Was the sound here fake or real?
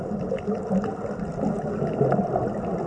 real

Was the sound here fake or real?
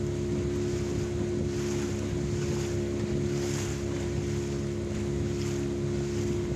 real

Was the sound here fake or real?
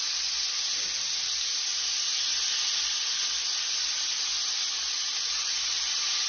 real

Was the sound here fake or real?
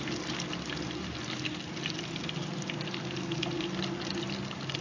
real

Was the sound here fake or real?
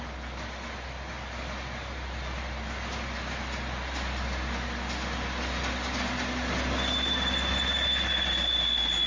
real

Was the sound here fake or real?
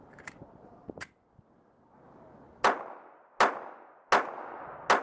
real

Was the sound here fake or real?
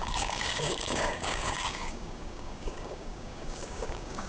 fake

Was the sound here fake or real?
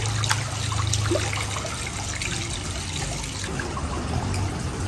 real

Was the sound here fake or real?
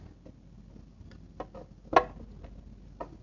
real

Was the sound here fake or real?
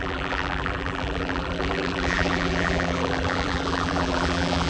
fake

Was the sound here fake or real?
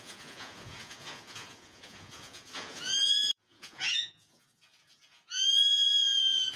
fake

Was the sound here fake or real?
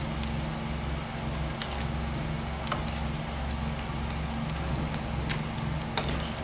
real